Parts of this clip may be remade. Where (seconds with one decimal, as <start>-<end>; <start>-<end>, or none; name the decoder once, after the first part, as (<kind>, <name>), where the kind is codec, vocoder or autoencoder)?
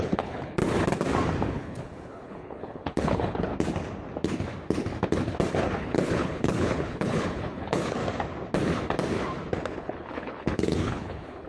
0.0-0.6 (codec, HILCodec); 1.5-3.5; 5.6-8.0; 9.8-11.5